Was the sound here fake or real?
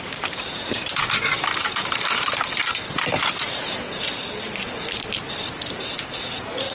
fake